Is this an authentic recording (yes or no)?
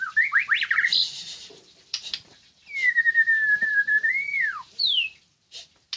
yes